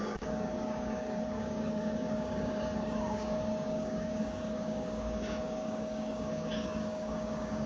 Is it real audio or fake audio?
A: fake